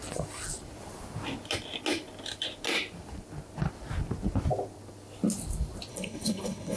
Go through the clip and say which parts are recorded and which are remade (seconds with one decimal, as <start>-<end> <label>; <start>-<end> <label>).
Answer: 0.0-5.9 recorded; 5.9-6.8 remade